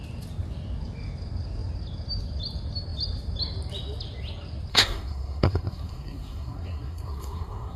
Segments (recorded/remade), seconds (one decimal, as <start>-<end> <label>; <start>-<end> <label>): 0.0-4.7 recorded; 4.7-7.8 remade